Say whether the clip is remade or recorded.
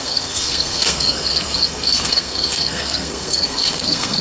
remade